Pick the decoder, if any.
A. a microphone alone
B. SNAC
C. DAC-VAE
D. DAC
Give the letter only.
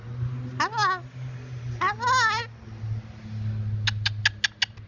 A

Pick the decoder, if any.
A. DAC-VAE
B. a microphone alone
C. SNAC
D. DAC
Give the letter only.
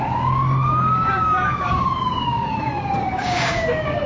D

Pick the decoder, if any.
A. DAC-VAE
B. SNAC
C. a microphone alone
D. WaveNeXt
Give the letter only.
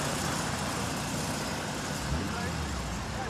C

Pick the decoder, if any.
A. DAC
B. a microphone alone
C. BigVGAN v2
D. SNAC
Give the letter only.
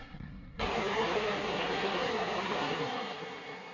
D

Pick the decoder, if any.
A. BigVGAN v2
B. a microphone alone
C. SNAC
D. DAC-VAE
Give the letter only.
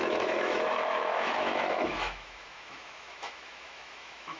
D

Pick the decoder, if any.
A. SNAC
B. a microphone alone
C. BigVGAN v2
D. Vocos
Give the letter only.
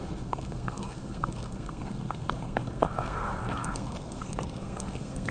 A